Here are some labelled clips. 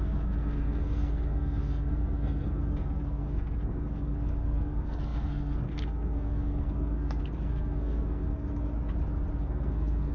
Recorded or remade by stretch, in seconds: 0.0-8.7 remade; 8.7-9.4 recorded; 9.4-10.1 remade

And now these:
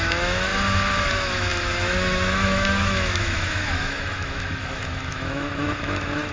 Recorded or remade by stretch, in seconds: 0.0-0.5 remade; 0.5-1.1 recorded; 1.1-6.3 remade

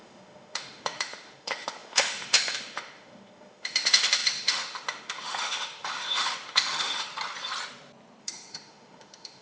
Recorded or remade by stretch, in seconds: 0.0-7.1 remade; 7.1-8.2 recorded; 8.2-9.4 remade

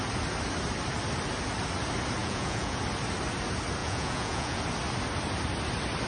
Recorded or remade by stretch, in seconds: 0.0-2.2 recorded; 2.2-2.8 remade; 2.8-3.8 recorded; 3.8-4.6 remade; 4.6-6.1 recorded